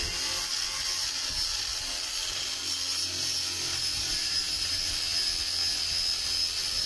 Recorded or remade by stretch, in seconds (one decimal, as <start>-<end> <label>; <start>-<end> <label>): 0.0-4.1 recorded; 4.1-4.8 remade; 4.8-6.9 recorded